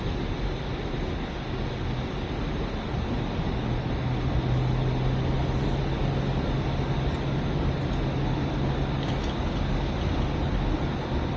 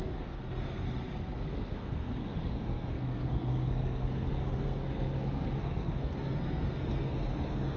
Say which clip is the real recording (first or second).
first